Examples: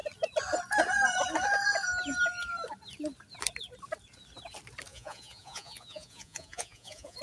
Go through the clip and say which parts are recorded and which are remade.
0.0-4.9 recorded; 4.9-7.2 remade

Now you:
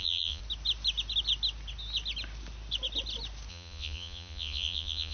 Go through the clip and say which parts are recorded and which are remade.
0.0-0.4 remade; 0.4-3.5 recorded; 3.5-5.1 remade

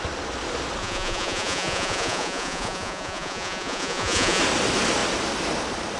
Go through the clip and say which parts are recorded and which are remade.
0.0-0.8 recorded; 0.8-4.4 remade; 4.4-6.0 recorded

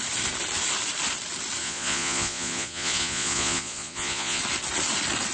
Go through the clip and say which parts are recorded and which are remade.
0.0-1.6 recorded; 1.6-4.4 remade; 4.4-5.3 recorded

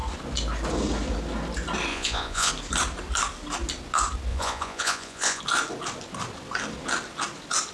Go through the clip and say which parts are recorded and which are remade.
0.0-1.9 recorded; 1.9-2.5 remade; 2.5-4.3 recorded; 4.3-5.4 remade; 5.4-7.7 recorded

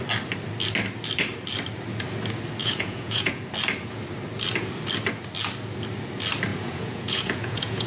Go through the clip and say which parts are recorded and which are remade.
0.0-2.6 recorded; 2.6-3.4 remade; 3.4-6.5 recorded; 6.5-7.9 remade